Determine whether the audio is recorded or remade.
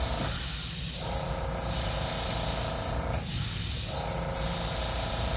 recorded